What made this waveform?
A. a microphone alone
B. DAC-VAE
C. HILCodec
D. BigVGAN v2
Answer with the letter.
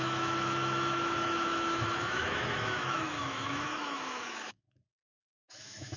B